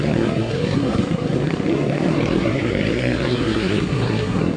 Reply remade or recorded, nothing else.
remade